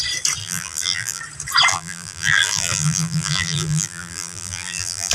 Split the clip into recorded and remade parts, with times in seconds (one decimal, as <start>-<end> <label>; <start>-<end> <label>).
0.0-0.4 recorded; 0.4-1.2 remade; 1.2-1.7 recorded; 1.7-5.1 remade

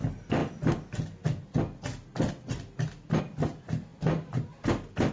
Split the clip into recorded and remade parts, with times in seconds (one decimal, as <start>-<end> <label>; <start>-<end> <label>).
0.0-5.1 recorded

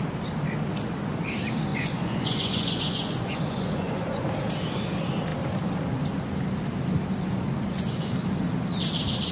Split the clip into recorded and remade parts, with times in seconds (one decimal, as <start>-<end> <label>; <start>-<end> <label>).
0.0-1.7 recorded; 1.7-4.2 remade; 4.2-9.3 recorded

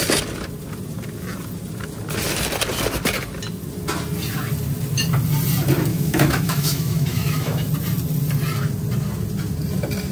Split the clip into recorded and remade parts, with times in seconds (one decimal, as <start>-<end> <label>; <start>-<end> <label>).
0.0-5.9 recorded; 5.9-7.7 remade; 7.7-10.1 recorded